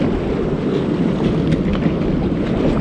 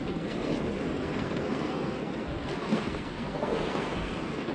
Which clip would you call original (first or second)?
first